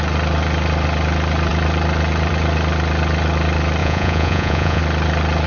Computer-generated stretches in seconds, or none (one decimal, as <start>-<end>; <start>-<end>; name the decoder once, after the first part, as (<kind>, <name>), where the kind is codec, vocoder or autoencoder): 3.8-4.8 (vocoder, Vocos)